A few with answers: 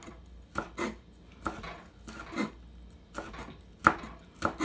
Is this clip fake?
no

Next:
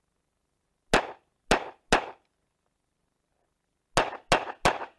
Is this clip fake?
no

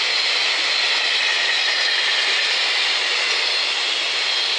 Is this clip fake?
no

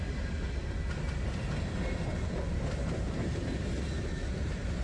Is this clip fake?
no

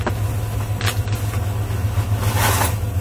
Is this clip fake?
no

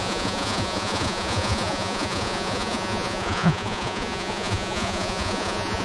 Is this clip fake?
yes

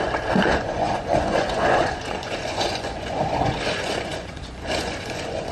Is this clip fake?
yes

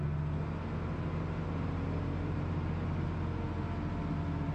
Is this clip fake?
no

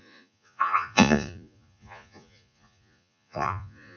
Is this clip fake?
yes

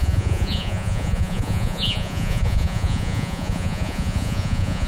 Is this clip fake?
yes